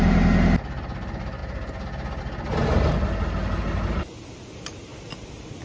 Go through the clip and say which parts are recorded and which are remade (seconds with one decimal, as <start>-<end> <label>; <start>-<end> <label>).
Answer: 0.0-5.6 recorded